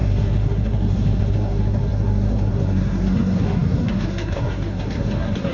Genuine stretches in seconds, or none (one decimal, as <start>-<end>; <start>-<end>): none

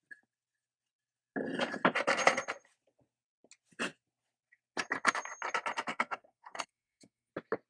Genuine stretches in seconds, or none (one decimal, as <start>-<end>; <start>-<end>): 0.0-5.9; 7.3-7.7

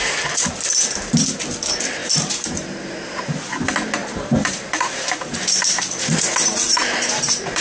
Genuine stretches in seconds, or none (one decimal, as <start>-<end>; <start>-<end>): 0.0-2.0; 3.4-4.0

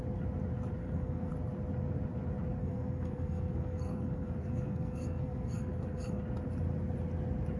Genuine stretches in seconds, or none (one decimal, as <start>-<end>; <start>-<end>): 0.0-0.8; 1.3-2.6; 6.2-7.6

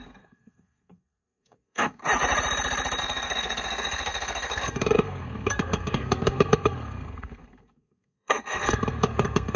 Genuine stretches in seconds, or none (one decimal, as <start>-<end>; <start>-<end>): 2.0-3.0